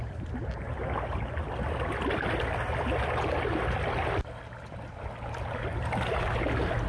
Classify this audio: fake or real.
real